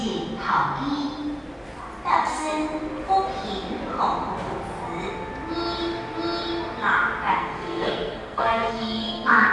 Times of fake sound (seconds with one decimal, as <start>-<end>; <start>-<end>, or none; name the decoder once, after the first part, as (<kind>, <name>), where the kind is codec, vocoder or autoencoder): 2.1-2.6 (codec, SNAC); 7.3-9.5